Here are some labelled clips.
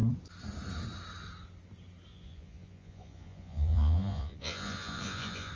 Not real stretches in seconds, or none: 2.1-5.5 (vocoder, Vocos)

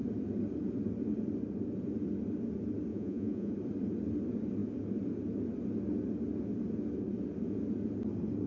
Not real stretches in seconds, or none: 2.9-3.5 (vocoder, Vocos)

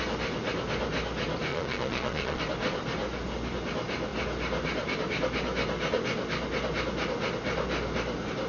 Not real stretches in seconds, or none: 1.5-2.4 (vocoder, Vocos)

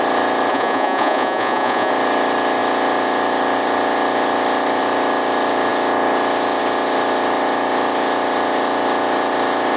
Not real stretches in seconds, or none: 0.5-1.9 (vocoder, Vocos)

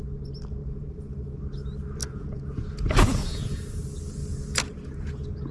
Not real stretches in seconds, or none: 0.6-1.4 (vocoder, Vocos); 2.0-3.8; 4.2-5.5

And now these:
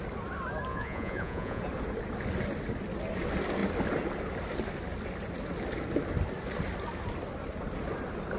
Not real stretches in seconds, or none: 0.7-1.6 (vocoder, Vocos)

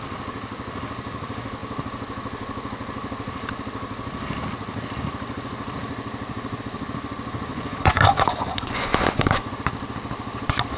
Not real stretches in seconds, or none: 7.5-9.5 (vocoder, Vocos)